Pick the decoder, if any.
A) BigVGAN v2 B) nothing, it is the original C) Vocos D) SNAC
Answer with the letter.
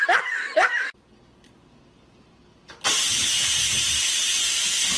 B